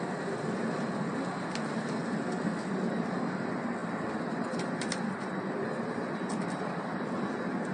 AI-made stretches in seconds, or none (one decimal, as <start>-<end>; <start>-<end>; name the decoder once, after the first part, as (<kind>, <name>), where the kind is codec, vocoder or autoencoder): 3.8-6.9 (vocoder, BigVGAN v2)